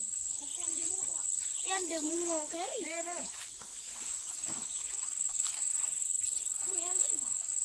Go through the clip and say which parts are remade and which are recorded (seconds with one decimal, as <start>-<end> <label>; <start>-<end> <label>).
0.0-0.5 remade; 0.5-2.1 recorded; 2.1-5.7 remade; 5.7-6.4 recorded; 6.4-7.6 remade

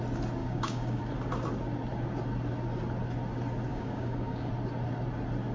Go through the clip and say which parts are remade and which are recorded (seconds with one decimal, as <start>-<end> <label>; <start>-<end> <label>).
0.0-0.4 recorded; 0.4-1.0 remade; 1.0-3.7 recorded; 3.7-4.5 remade; 4.5-5.5 recorded

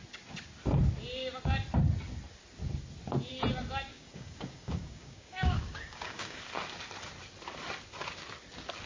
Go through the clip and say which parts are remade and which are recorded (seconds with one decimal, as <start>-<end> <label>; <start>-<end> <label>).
0.0-3.9 recorded; 3.9-6.4 remade; 6.4-8.9 recorded

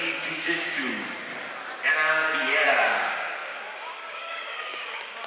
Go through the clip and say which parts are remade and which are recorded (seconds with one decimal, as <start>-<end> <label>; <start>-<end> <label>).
0.0-1.3 remade; 1.3-1.9 recorded; 1.9-5.3 remade